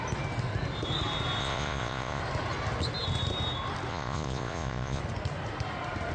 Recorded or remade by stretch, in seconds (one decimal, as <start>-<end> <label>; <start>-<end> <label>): 0.0-1.4 recorded; 1.4-2.2 remade; 2.2-3.9 recorded; 3.9-5.0 remade; 5.0-6.1 recorded